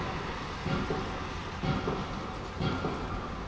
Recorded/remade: recorded